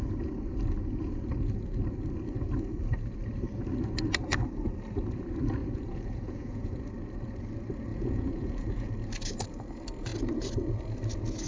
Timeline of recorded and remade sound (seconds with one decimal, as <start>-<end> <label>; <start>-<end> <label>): 0.0-5.6 recorded; 5.6-6.7 remade; 6.7-7.9 recorded; 7.9-8.9 remade; 8.9-11.5 recorded